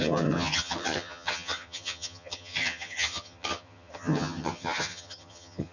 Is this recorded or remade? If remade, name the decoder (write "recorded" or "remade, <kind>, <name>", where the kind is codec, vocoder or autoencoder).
remade, vocoder, HiFi-GAN